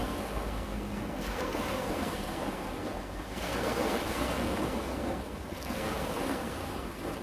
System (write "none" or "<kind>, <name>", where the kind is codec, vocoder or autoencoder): codec, SNAC